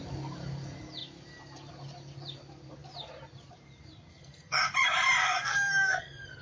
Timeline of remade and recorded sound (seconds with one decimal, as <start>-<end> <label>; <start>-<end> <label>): 0.0-4.1 recorded; 4.1-4.6 remade; 4.6-5.2 recorded; 5.2-6.4 remade